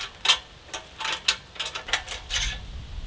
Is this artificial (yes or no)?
no